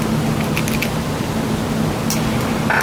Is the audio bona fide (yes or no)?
yes